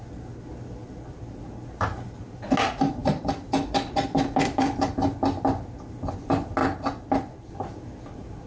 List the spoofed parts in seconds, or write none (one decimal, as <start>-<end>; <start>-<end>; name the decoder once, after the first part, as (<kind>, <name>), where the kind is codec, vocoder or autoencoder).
3.0-4.9 (vocoder, BigVGAN v2); 6.6-7.5